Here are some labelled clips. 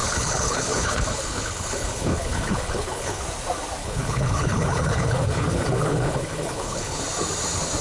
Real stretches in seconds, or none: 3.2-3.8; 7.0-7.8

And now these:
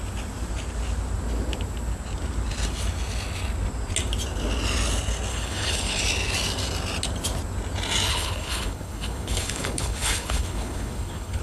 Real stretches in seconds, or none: 0.0-5.3; 6.0-8.1

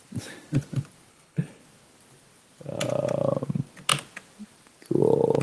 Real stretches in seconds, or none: 0.0-1.1; 1.6-5.4